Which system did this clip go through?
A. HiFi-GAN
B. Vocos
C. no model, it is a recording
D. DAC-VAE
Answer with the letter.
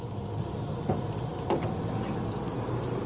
C